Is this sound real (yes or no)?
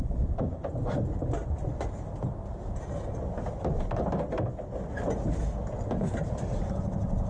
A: yes